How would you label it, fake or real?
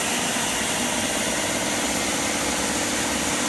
real